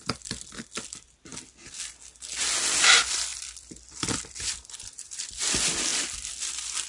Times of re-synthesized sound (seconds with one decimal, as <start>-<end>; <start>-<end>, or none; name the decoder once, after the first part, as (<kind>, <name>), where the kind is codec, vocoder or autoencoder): 0.0-1.3 (vocoder, BigVGAN v2); 2.8-5.9; 6.5-6.9